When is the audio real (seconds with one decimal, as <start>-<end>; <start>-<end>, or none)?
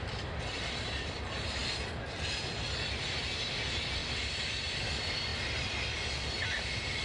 0.0-7.0